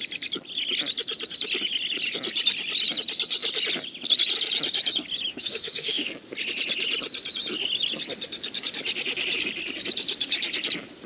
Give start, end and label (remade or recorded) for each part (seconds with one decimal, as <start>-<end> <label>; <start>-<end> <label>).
0.0-5.3 recorded; 5.3-6.1 remade; 6.1-11.1 recorded